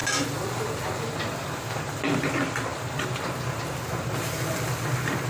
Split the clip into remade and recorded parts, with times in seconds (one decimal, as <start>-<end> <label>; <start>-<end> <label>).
0.0-5.3 recorded